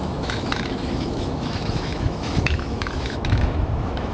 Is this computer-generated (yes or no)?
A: yes